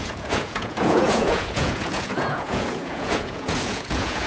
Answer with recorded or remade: remade